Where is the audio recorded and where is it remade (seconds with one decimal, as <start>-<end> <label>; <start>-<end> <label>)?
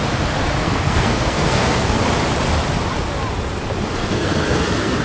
0.0-0.6 recorded; 0.6-2.0 remade; 2.0-4.0 recorded; 4.0-5.0 remade